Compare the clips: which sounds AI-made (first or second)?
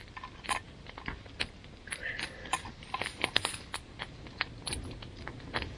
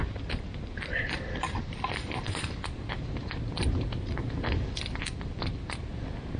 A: second